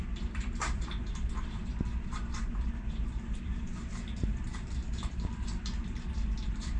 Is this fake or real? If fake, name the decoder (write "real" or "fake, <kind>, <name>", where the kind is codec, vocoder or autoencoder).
fake, vocoder, BigVGAN v2